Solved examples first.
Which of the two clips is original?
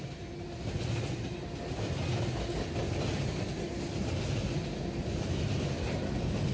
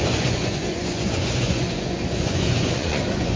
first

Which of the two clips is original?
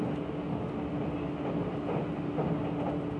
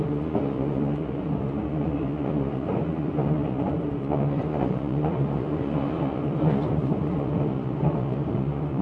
first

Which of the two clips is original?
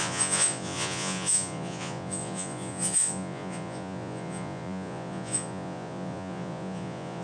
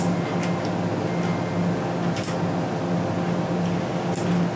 second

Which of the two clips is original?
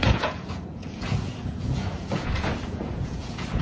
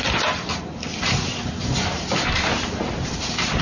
second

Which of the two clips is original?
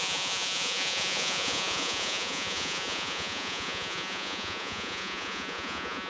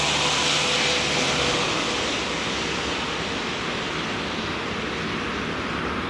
second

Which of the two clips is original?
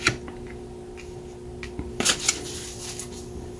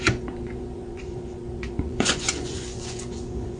first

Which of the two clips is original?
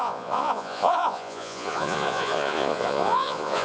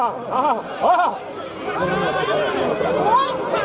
second